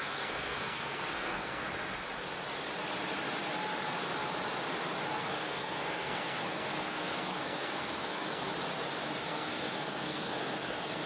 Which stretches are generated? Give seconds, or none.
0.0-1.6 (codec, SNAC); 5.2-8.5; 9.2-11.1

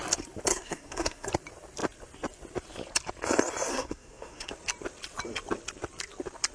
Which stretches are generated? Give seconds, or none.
0.5-1.3 (codec, SNAC); 3.7-4.5